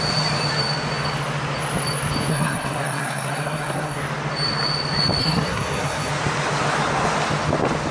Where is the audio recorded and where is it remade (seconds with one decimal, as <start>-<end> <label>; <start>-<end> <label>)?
0.0-2.3 recorded; 2.3-4.0 remade; 4.0-5.2 recorded; 5.2-6.1 remade; 6.1-7.9 recorded